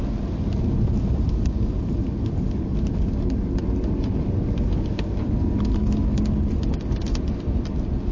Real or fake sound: real